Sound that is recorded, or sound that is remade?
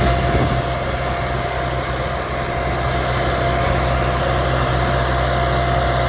recorded